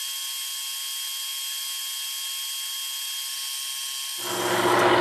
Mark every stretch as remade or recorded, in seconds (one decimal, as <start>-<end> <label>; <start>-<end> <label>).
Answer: 0.0-5.0 recorded